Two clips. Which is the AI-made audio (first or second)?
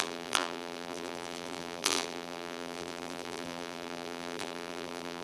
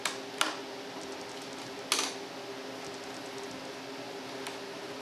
first